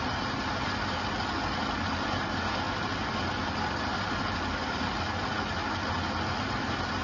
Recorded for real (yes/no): yes